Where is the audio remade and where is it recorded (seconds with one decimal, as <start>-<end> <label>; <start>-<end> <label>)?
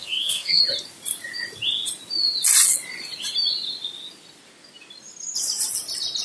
0.0-0.6 remade; 0.6-6.2 recorded